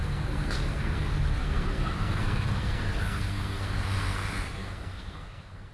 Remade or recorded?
remade